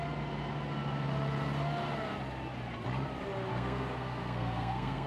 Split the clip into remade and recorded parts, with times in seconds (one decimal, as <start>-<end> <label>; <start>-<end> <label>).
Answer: 0.0-3.5 recorded; 3.5-5.1 remade